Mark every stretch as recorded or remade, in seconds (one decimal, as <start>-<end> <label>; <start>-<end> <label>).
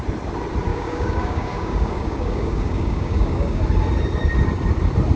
0.0-0.7 recorded; 0.7-3.6 remade; 3.6-5.2 recorded